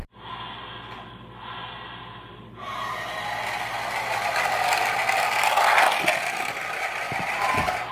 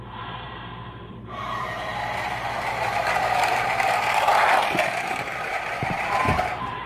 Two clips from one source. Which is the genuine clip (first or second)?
first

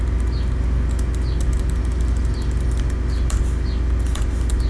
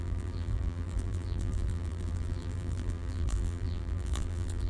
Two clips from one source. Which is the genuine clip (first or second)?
first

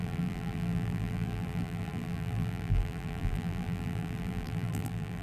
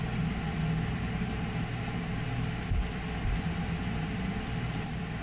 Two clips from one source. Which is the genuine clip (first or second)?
second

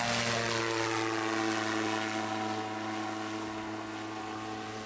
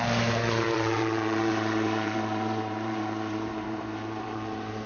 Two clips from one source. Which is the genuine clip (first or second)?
first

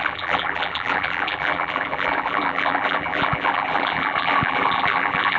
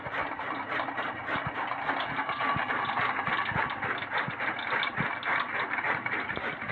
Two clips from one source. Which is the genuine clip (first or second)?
second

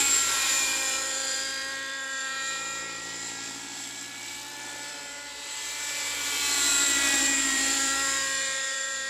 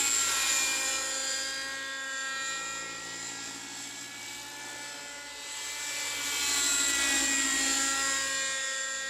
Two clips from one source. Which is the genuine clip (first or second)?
second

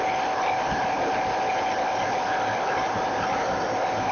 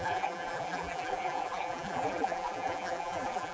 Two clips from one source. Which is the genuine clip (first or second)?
first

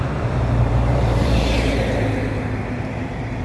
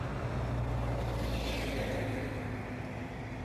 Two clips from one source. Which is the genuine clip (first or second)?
second